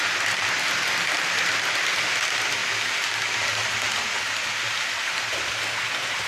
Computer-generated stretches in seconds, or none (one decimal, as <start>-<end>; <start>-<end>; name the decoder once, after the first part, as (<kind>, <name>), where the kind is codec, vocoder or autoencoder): none